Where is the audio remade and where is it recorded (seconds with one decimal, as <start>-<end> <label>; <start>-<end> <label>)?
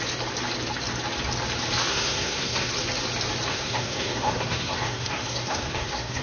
0.0-1.9 recorded; 1.9-2.7 remade; 2.7-3.5 recorded; 3.5-6.2 remade